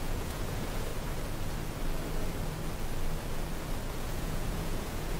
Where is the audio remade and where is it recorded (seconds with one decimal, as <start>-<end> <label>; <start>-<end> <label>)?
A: 0.0-0.9 remade; 0.9-4.0 recorded; 4.0-5.2 remade